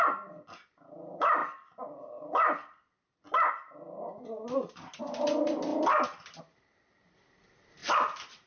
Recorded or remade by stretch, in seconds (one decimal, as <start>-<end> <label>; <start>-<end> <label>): 0.0-7.8 recorded; 7.8-8.5 remade